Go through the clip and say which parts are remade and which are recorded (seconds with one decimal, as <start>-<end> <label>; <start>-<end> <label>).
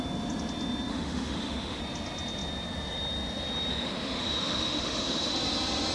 0.0-0.9 recorded; 0.9-1.8 remade; 1.8-3.7 recorded; 3.7-5.3 remade; 5.3-5.9 recorded